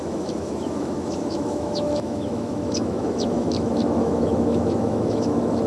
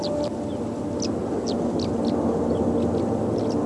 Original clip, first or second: second